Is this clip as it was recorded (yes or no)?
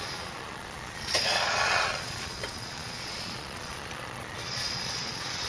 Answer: no